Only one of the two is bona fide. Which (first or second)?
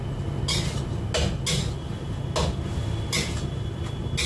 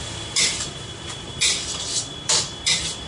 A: first